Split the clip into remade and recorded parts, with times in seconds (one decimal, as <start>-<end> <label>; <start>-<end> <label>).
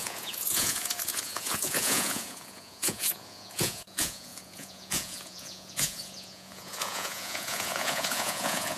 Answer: 0.0-8.8 remade